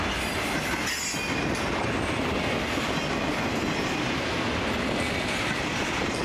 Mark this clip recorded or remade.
recorded